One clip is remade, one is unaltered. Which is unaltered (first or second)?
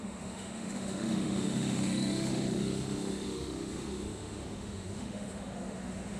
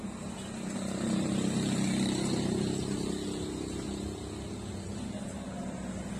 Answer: second